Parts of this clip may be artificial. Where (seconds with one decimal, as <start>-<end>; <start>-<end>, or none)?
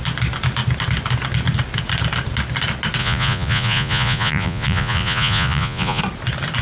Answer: 3.0-6.0